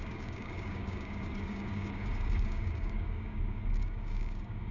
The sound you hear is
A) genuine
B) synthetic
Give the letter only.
B